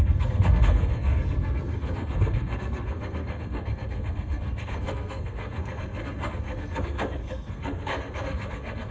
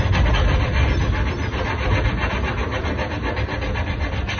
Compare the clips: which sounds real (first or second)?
second